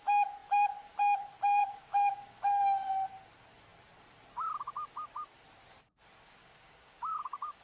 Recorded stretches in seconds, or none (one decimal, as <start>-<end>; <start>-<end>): 0.0-1.6; 2.6-6.4